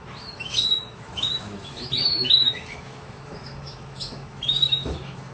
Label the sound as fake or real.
fake